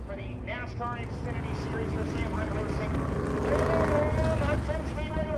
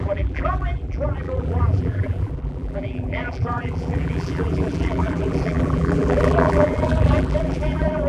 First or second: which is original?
first